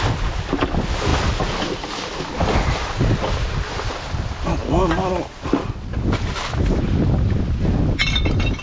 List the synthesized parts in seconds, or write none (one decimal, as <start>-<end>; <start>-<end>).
none